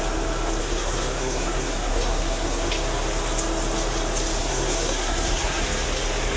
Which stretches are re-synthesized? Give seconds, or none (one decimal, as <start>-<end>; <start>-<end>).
0.6-2.7; 4.4-5.6